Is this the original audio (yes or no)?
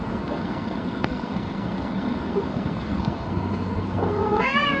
no